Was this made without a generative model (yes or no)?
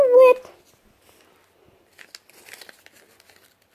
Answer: yes